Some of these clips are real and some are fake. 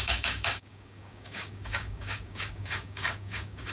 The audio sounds fake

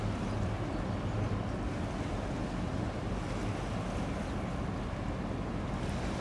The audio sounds real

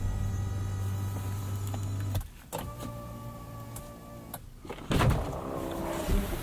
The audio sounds real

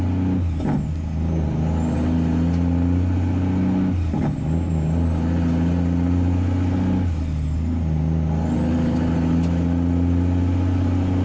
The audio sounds real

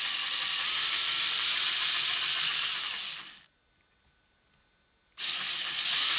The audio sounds real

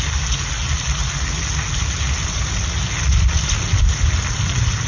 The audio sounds real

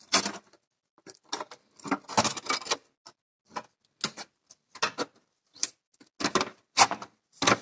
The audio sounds real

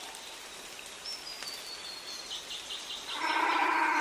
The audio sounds real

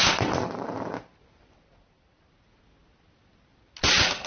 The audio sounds real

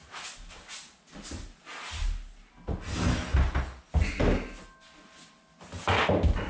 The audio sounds real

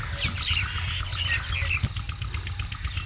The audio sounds real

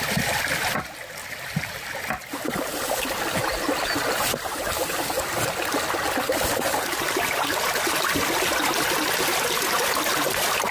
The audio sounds real